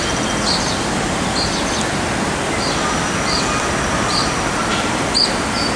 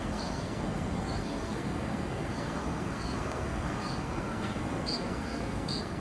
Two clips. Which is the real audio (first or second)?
first